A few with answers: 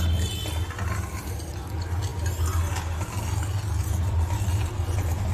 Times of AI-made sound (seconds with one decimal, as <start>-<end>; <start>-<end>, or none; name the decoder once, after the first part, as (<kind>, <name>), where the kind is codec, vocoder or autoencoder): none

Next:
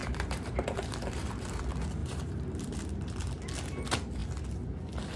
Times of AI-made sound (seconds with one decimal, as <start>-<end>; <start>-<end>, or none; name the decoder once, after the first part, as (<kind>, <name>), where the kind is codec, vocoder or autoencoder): 0.0-1.6 (vocoder, BigVGAN v2); 2.0-2.7

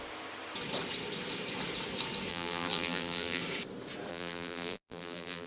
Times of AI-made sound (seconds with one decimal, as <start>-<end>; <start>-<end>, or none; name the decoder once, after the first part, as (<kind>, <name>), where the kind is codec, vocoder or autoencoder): 2.3-3.4 (vocoder, BigVGAN v2); 4.1-5.5